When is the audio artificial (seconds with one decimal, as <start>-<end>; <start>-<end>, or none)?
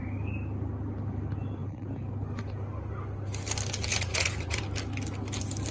3.9-4.6